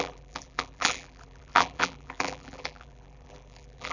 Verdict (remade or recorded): remade